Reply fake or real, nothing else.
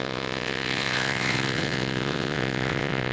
fake